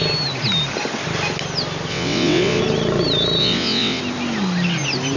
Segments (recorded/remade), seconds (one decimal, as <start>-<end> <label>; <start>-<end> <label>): 0.0-1.9 recorded; 1.9-2.6 remade; 2.6-3.4 recorded; 3.4-4.0 remade; 4.0-5.2 recorded